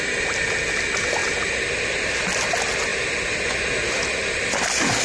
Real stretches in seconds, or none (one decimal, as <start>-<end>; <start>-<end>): 0.0-5.0